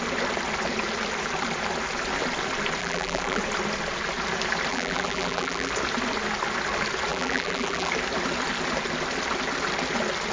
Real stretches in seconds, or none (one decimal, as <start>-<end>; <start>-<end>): 0.0-2.8; 3.4-4.7; 5.7-7.1; 7.9-10.3